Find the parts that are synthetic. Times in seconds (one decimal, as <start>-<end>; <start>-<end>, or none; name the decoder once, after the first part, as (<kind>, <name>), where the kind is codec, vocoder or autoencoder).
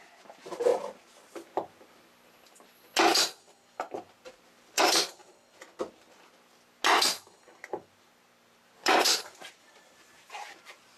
0.0-0.7 (vocoder, BigVGAN v2); 4.8-5.2; 7.8-11.0